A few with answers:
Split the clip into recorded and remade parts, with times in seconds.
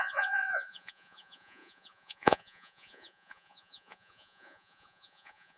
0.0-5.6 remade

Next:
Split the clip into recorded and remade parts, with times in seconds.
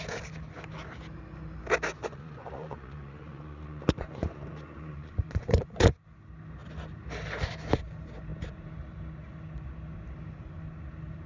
0.0-2.0 recorded; 2.0-5.9 remade; 5.9-11.3 recorded